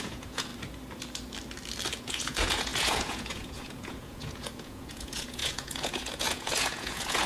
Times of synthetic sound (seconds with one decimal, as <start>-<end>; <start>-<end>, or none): 0.0-0.5; 2.0-7.3